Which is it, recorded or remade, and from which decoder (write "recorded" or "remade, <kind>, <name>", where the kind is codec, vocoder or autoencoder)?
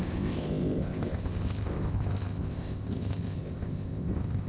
remade, codec, ZipCodec